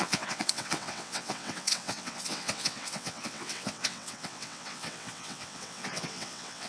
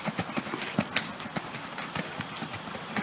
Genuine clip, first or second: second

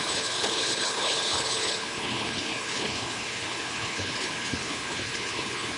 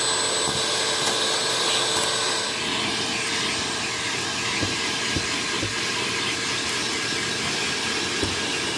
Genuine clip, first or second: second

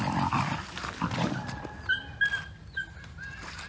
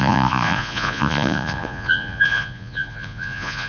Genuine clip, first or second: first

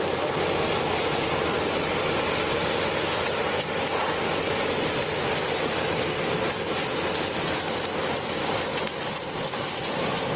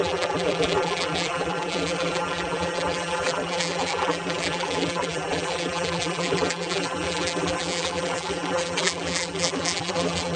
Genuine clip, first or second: first